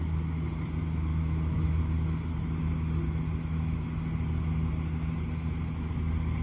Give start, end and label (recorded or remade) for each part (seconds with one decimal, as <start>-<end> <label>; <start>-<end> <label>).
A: 0.0-1.1 recorded; 1.1-1.8 remade; 1.8-6.4 recorded